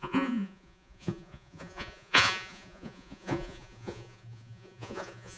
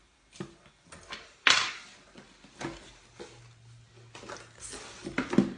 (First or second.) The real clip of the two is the second